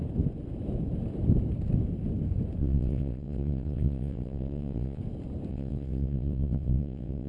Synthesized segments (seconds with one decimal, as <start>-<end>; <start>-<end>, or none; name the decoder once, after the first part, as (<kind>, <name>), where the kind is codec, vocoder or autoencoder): 2.6-5.0 (vocoder, WaveNeXt); 5.5-7.3